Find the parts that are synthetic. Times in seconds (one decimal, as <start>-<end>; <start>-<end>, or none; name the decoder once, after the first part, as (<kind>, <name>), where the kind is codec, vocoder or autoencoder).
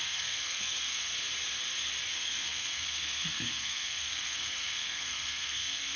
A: 0.0-1.1 (codec, SNAC); 2.1-6.0